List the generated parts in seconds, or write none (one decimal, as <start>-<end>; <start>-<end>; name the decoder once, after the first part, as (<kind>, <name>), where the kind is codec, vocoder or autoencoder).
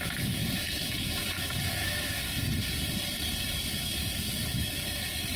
0.0-2.2 (autoencoder, DAC-VAE); 3.6-5.4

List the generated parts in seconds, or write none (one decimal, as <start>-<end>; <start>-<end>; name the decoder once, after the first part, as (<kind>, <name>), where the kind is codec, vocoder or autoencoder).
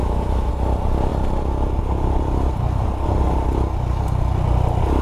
0.0-0.5 (autoencoder, DAC-VAE)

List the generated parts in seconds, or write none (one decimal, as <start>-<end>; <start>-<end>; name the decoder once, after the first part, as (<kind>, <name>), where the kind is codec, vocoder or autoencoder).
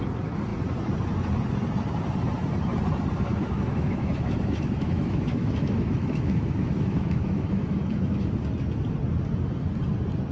3.3-8.3 (autoencoder, DAC-VAE)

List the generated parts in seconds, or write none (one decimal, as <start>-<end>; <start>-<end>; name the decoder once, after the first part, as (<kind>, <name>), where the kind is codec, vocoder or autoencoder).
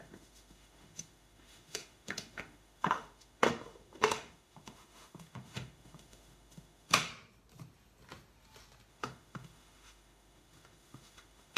0.0-7.1 (autoencoder, DAC-VAE); 8.9-11.6